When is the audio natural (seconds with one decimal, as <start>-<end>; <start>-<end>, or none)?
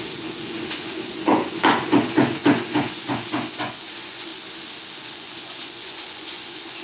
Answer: 4.3-4.9